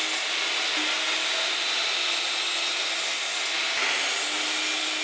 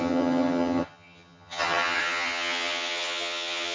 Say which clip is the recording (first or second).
first